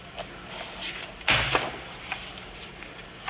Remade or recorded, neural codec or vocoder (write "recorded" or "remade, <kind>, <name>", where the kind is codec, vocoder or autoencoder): recorded